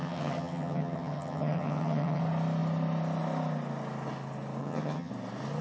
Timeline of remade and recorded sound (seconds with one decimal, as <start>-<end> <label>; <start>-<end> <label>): 0.0-2.2 remade; 2.2-4.6 recorded; 4.6-5.1 remade; 5.1-5.6 recorded